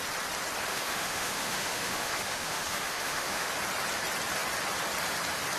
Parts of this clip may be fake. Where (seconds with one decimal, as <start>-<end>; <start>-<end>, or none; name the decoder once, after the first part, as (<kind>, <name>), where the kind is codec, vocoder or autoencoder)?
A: 0.7-3.5 (autoencoder, DAC-VAE)